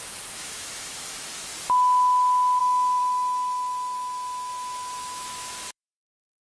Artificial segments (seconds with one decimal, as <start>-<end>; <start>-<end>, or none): 0.0-1.5; 2.6-6.5